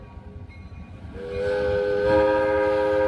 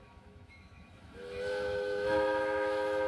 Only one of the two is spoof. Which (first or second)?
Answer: second